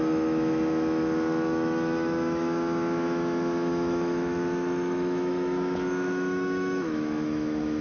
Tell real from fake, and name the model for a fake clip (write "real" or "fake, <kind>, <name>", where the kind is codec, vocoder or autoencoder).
fake, autoencoder, DAC-VAE